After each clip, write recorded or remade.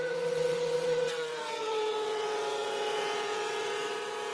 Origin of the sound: remade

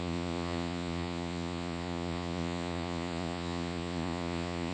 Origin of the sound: remade